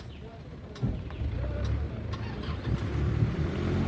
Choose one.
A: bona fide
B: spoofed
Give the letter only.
A